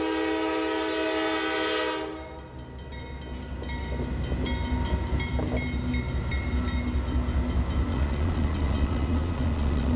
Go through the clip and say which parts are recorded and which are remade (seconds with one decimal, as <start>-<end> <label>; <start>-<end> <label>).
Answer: 0.0-7.9 recorded; 7.9-10.0 remade